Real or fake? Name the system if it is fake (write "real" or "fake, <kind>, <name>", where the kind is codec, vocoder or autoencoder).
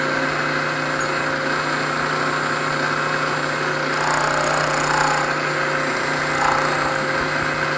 real